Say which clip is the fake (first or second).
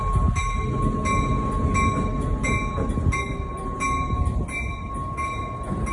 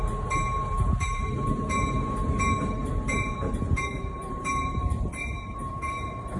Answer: second